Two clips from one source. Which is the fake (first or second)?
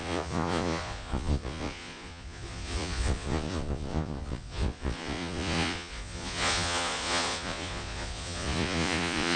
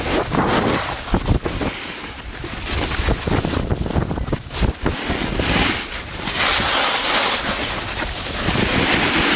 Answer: first